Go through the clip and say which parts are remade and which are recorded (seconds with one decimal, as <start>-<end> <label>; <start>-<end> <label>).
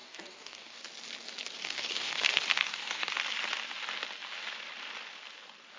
0.0-0.8 remade; 0.8-1.6 recorded; 1.6-2.1 remade; 2.1-2.6 recorded; 2.6-3.1 remade; 3.1-5.8 recorded